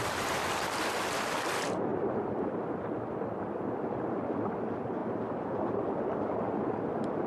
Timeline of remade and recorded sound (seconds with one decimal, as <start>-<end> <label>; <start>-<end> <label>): 0.0-7.3 recorded